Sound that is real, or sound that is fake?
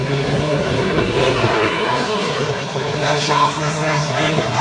fake